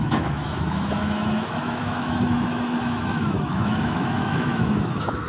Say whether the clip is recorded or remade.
remade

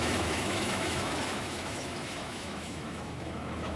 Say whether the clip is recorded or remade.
remade